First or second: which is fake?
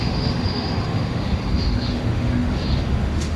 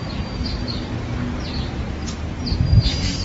first